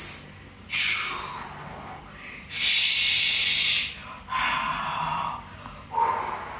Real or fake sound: real